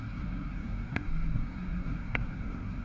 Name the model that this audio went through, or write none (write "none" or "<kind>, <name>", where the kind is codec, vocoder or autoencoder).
codec, SNAC